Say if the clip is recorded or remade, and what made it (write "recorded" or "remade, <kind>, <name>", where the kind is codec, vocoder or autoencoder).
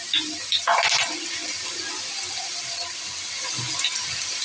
recorded